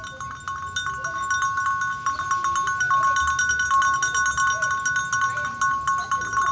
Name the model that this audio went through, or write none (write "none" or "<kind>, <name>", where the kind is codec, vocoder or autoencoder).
none